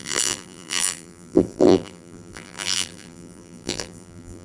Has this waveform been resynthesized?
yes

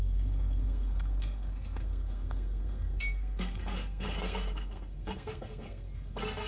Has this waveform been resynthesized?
yes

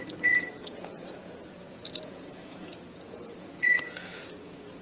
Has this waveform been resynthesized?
yes